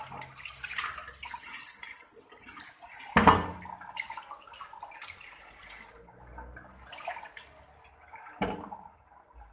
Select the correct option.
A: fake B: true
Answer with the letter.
B